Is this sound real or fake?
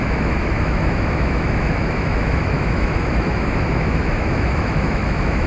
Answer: fake